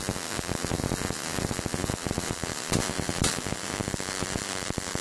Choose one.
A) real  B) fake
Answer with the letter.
A